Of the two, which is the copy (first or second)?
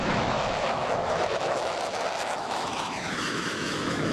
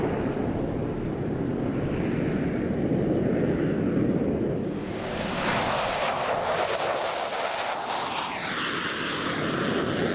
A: first